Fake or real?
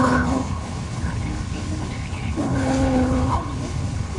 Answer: fake